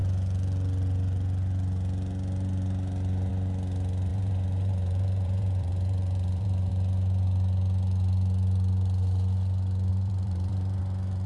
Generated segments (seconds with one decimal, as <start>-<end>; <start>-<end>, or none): 4.1-6.7; 9.9-10.8